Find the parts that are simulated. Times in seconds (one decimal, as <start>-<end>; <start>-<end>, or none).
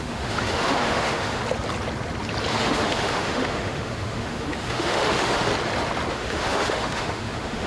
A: 0.0-1.4; 2.5-5.5; 6.1-7.7